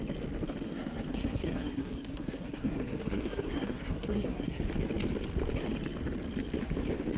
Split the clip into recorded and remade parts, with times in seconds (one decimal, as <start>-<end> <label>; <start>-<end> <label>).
0.0-1.1 recorded; 1.1-4.6 remade; 4.6-7.2 recorded